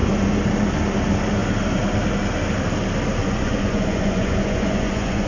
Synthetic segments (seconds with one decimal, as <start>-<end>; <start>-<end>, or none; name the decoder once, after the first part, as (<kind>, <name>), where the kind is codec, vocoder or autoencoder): 3.2-5.3 (vocoder, Vocos)